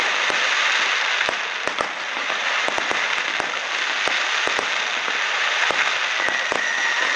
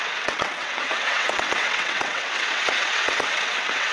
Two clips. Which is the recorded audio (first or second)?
first